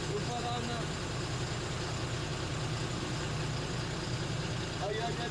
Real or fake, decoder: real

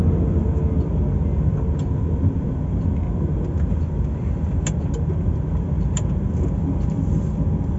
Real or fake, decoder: real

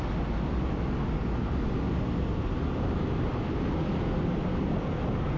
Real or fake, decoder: real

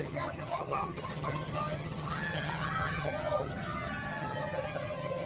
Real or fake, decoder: fake, vocoder, HiFi-GAN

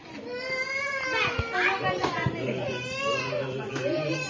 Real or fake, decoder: real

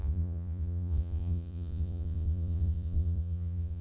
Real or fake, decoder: fake, vocoder, Vocos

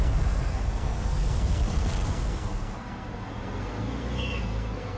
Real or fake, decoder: fake, codec, SNAC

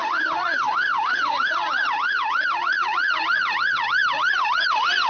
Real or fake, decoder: fake, vocoder, Vocos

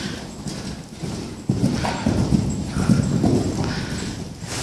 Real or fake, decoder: real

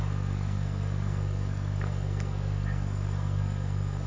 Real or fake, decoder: fake, codec, SNAC